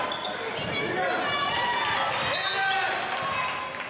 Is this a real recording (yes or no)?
yes